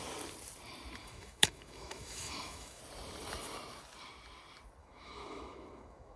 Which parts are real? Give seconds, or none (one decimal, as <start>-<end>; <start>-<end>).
0.0-1.0; 2.8-4.8